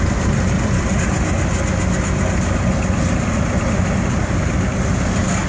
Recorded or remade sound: recorded